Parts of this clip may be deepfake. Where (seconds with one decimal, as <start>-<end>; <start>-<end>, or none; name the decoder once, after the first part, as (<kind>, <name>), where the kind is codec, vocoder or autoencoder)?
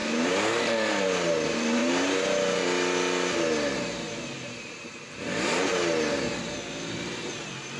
0.0-1.8 (vocoder, BigVGAN v2); 6.4-7.8